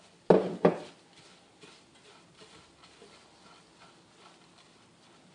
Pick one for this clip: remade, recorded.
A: recorded